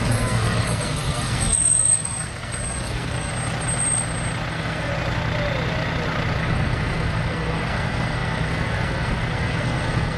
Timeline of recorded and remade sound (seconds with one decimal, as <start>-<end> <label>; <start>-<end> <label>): 0.0-3.3 remade; 3.3-4.5 recorded; 4.5-4.9 remade; 4.9-6.4 recorded; 6.4-10.2 remade